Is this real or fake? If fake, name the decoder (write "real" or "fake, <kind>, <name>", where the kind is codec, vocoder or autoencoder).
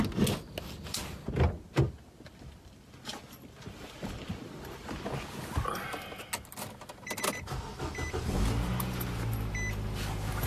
real